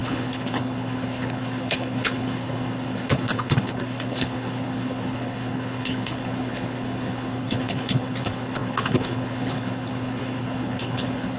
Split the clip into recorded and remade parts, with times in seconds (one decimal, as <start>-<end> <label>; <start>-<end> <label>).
0.0-11.4 remade